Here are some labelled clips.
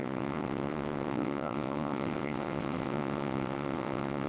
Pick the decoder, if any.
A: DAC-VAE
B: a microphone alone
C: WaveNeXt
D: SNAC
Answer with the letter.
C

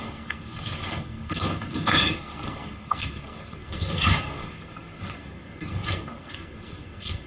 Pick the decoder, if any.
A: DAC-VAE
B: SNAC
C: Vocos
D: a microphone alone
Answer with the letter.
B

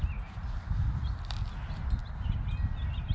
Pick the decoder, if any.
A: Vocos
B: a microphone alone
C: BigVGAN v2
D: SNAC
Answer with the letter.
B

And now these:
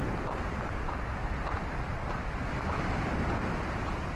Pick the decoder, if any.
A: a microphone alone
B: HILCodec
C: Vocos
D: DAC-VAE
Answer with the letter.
A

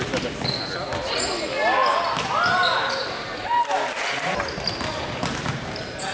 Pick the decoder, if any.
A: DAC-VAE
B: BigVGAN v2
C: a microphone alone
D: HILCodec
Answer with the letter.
C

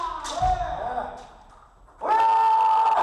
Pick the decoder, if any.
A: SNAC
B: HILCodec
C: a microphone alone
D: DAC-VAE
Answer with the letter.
C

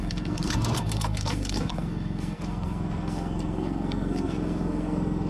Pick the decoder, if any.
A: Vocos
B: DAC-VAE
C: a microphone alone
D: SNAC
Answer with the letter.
D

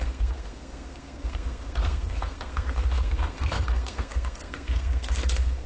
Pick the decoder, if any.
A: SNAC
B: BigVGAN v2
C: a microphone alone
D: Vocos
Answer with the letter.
A